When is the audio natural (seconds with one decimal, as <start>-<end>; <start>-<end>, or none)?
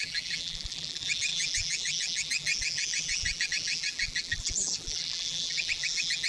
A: none